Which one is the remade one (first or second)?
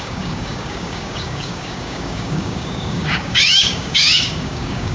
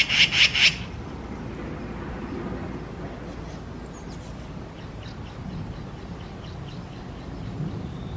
first